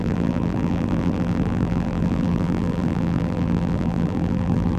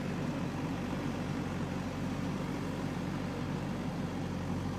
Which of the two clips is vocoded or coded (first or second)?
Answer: first